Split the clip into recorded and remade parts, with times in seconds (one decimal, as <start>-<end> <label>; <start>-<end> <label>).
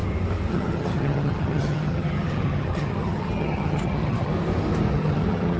0.0-0.5 recorded; 0.5-4.3 remade; 4.3-4.9 recorded; 4.9-5.6 remade